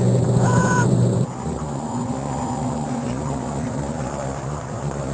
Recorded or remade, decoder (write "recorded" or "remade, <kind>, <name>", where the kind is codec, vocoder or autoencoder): remade, vocoder, Vocos